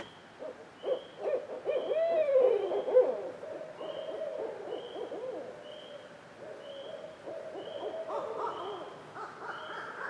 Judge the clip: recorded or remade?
recorded